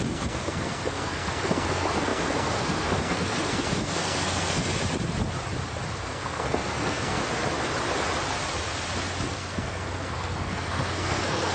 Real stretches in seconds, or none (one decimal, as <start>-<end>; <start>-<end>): 4.7-6.0; 7.2-9.3